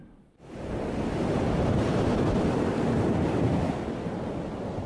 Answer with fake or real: real